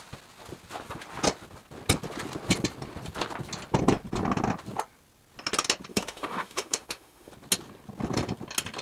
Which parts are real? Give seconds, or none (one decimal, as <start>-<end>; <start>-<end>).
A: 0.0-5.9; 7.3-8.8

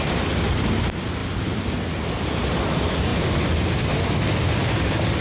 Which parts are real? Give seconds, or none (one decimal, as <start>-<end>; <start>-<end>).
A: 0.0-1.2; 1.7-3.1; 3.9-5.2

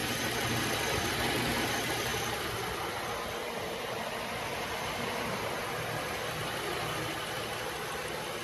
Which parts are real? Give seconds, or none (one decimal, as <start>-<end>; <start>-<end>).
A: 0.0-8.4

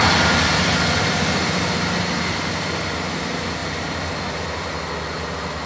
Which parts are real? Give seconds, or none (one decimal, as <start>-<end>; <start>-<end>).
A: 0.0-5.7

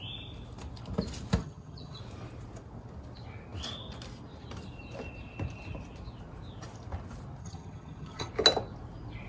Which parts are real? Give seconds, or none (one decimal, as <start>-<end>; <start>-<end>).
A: 0.0-1.4; 2.0-7.4; 8.3-9.3

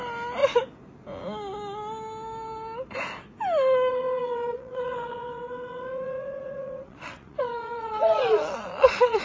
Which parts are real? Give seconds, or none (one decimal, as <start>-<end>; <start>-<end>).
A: 0.0-3.9

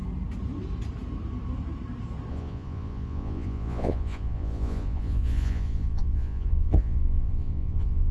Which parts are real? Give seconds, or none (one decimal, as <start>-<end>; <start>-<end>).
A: 0.0-2.3

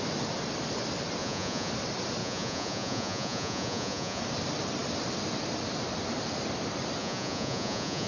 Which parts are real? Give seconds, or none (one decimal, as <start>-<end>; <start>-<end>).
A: 0.0-1.2; 1.7-2.2; 4.2-7.0